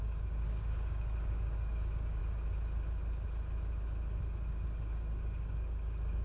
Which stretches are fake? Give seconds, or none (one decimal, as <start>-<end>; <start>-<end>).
0.0-2.2; 4.2-6.2